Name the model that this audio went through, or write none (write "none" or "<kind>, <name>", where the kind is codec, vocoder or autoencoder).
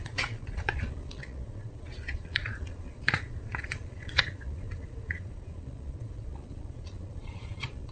vocoder, Vocos